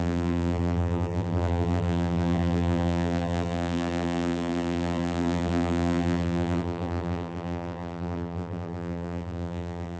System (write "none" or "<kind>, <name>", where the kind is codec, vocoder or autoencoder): vocoder, BigVGAN v2